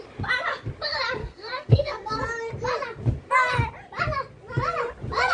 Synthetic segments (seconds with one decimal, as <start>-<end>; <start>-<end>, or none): 1.2-2.2